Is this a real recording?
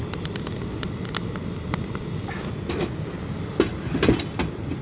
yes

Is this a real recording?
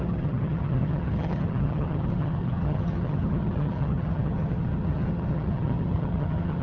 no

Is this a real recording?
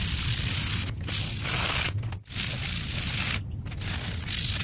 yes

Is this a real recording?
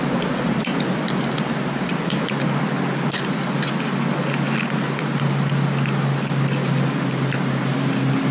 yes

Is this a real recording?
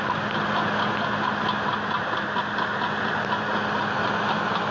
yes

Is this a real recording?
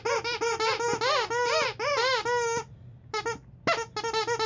yes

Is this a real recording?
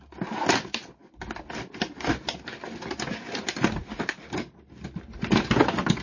yes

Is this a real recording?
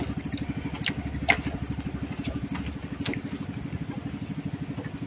yes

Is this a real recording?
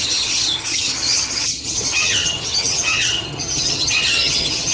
no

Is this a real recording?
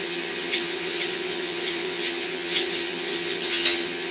no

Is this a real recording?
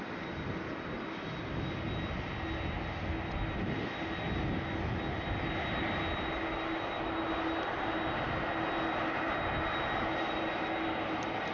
yes